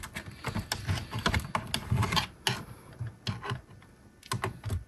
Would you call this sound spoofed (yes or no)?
no